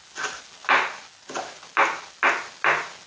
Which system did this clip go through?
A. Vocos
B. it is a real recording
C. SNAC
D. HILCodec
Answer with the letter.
B